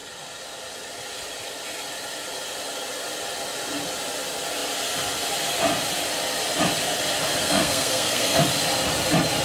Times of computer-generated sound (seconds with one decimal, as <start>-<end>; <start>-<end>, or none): 7.4-8.4